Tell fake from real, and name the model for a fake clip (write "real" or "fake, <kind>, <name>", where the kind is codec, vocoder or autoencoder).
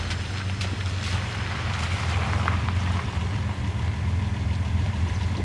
fake, vocoder, BigVGAN v2